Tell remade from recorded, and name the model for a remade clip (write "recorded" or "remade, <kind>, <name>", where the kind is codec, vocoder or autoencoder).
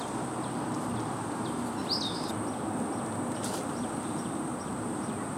recorded